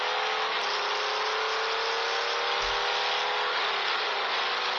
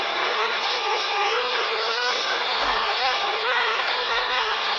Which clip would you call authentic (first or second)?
first